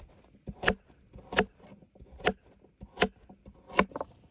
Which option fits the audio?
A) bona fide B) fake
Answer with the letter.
A